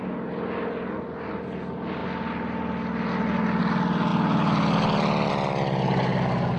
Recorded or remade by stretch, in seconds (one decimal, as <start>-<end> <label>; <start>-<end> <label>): 0.0-6.6 recorded